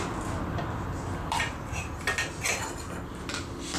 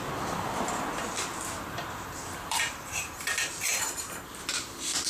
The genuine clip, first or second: first